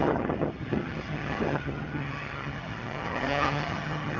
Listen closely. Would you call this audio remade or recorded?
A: remade